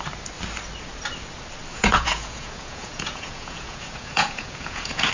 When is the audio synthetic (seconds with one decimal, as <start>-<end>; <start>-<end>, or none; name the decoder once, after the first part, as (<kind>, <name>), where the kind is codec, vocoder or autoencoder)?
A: 1.7-5.1 (vocoder, Vocos)